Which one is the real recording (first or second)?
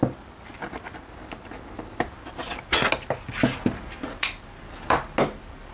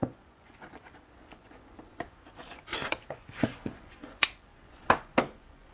first